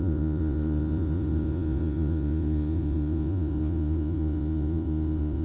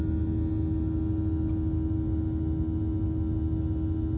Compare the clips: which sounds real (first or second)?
second